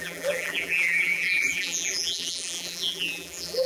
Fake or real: fake